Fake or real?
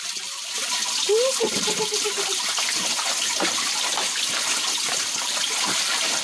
fake